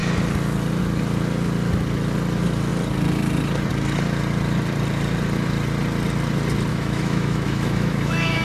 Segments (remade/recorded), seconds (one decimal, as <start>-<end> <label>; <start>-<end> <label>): 0.0-6.7 recorded; 6.7-8.4 remade